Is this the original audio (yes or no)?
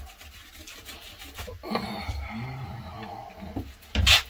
yes